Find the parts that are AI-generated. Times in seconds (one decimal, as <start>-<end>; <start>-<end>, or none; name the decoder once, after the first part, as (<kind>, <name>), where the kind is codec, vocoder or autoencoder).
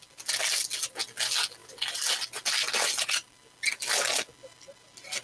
none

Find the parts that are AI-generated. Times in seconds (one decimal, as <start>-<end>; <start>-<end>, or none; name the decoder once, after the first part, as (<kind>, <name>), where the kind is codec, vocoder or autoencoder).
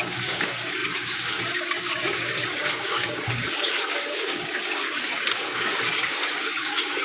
0.0-7.0 (codec, DAC)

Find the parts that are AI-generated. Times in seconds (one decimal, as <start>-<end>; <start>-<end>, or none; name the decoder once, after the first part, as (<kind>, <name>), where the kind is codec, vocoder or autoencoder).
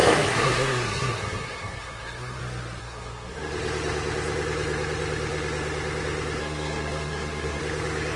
0.0-2.4 (codec, SNAC); 2.8-3.5; 6.4-7.6